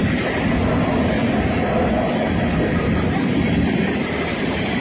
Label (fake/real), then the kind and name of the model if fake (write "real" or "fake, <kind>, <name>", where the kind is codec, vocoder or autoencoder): real